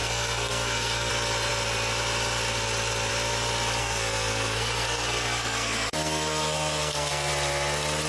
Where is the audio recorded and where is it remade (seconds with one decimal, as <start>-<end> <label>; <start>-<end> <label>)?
0.0-1.1 remade; 1.1-3.8 recorded; 3.8-7.3 remade; 7.3-8.1 recorded